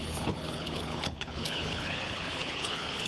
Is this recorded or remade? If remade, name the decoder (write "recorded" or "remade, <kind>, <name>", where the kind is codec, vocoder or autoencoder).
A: remade, codec, HILCodec